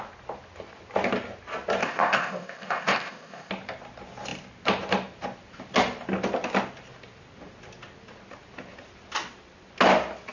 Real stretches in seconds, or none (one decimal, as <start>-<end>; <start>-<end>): 0.0-1.8; 3.5-10.3